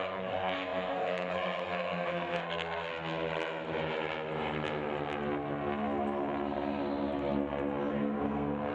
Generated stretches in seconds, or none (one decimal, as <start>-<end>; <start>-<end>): 0.0-2.9; 7.9-8.7

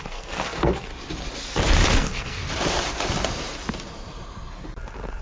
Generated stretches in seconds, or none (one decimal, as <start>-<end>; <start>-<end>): 0.0-0.9; 1.9-2.4

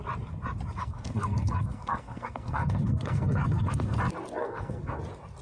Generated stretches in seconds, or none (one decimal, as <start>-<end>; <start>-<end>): 0.8-4.0; 4.4-5.0

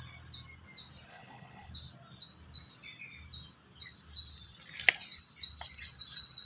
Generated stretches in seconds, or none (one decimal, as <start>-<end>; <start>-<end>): 1.1-1.7

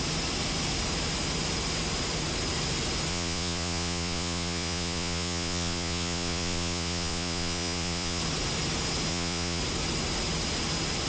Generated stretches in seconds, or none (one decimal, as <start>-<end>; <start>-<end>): 3.1-8.2; 9.1-9.6